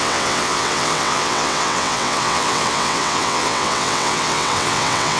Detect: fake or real fake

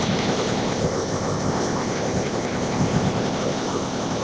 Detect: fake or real fake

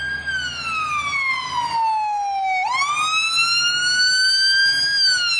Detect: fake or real real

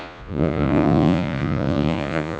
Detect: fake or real fake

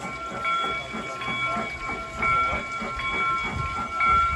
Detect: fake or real real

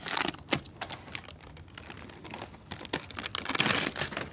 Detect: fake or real real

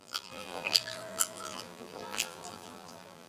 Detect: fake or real fake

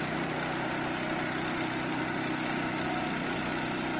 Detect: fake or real real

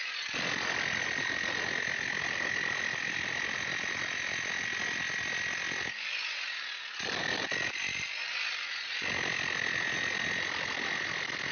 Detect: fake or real real